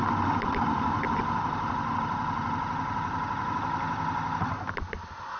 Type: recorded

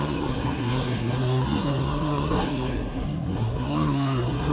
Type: remade